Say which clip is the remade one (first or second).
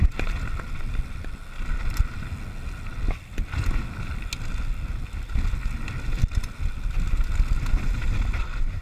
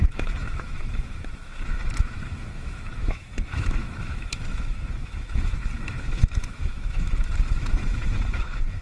second